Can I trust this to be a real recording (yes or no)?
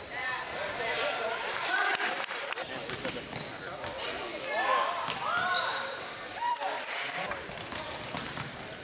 no